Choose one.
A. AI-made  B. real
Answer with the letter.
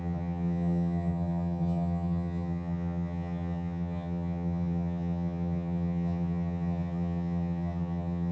A